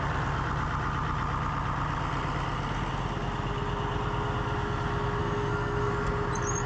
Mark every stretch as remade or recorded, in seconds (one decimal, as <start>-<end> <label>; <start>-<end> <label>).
0.0-5.2 recorded; 5.2-5.9 remade; 5.9-6.7 recorded